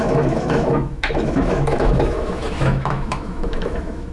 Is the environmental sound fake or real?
fake